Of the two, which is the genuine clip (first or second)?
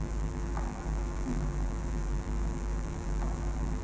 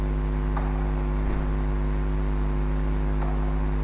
second